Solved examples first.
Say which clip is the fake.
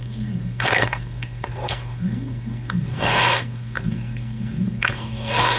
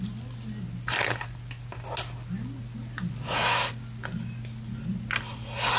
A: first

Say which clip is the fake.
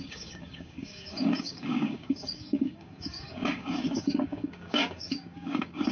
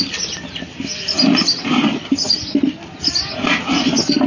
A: first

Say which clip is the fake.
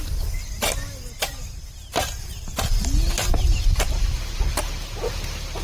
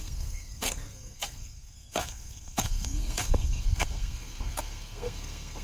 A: second